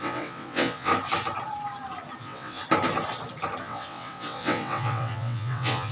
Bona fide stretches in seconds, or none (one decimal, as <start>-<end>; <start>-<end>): 0.9-2.2; 2.6-3.6